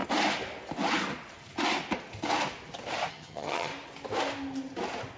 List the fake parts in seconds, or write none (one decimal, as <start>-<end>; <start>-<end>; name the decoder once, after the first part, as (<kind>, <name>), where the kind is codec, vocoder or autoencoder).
3.1-3.7 (vocoder, HiFi-GAN)